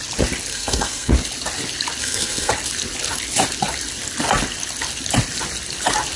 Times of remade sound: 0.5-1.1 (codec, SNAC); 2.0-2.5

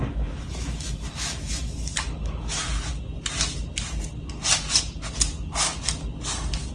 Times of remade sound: 0.0-2.6 (autoencoder, DAC-VAE)

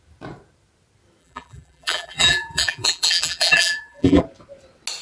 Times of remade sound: 1.2-4.2 (vocoder, BigVGAN v2)

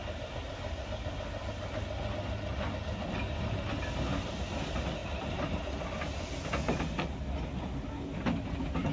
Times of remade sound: none

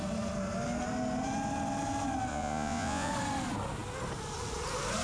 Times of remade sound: 2.3-3.1 (vocoder, Vocos)

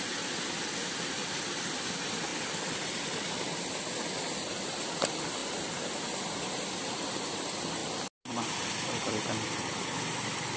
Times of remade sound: 2.3-3.8 (vocoder, BigVGAN v2)

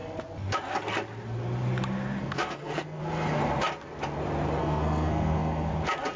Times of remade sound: 2.2-3.0 (codec, SNAC); 4.6-5.7